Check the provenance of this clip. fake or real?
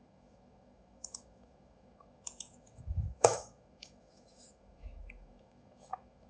fake